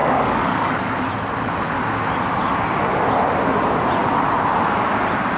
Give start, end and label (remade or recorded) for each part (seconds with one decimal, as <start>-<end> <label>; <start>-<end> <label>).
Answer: 0.0-1.1 remade; 1.1-5.4 recorded